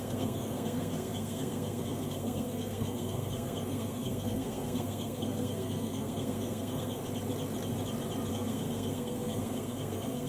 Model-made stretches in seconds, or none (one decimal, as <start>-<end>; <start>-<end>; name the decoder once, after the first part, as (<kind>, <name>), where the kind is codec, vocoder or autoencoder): 0.0-7.0 (codec, SNAC); 8.3-10.3

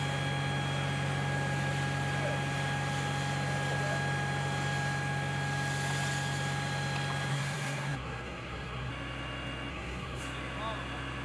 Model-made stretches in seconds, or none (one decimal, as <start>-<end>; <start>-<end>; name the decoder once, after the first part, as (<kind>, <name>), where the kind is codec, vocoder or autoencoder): 7.3-8.9 (codec, SNAC); 9.7-10.2

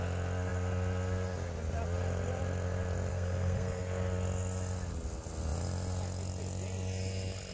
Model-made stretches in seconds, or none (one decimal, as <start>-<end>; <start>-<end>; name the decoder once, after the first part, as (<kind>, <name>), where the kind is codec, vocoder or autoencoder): 3.1-3.8 (codec, SNAC)

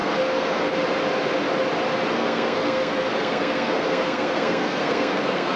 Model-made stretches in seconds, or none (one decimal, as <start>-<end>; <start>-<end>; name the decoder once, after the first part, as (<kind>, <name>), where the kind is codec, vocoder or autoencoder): 0.0-0.7 (codec, SNAC); 2.1-5.6

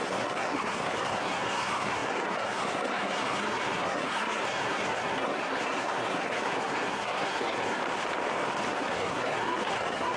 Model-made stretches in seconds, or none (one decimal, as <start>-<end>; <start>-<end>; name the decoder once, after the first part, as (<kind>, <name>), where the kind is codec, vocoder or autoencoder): 0.0-7.8 (codec, SNAC); 8.7-10.2

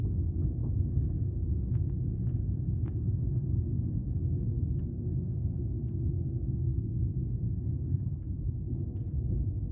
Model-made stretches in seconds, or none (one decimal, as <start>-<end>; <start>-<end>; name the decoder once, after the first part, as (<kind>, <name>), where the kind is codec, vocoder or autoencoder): 4.9-8.4 (codec, SNAC)

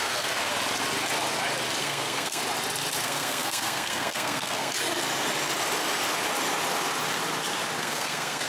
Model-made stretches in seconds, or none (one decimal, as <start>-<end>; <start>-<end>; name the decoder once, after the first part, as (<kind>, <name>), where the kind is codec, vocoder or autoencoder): 0.0-0.5 (codec, SNAC); 1.8-2.4; 3.0-4.7; 7.8-8.5

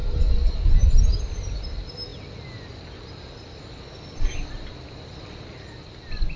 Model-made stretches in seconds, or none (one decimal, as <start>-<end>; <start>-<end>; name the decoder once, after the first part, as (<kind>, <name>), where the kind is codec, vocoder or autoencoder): none